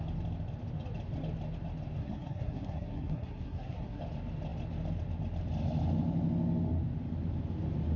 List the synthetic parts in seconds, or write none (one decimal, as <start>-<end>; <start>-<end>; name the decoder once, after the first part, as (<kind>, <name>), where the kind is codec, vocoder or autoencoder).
2.0-4.0 (codec, SNAC)